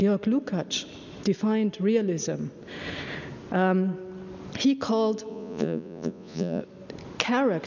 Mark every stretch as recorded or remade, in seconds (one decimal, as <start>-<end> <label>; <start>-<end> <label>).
0.0-5.3 recorded; 5.3-6.6 remade; 6.6-7.7 recorded